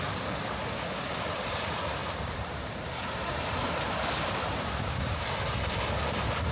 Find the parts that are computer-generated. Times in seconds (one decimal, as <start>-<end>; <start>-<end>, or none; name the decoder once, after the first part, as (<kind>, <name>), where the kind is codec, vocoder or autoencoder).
2.0-5.4 (vocoder, BigVGAN v2)